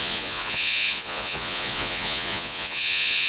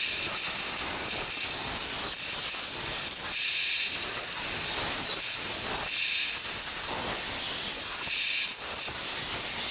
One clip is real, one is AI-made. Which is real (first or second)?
second